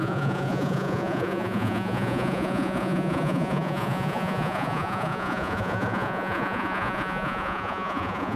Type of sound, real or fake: fake